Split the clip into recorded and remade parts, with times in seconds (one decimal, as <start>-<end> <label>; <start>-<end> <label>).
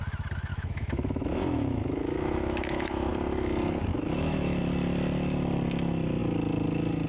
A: 0.0-0.5 recorded; 0.5-3.1 remade; 3.1-3.9 recorded; 3.9-4.6 remade; 4.6-7.1 recorded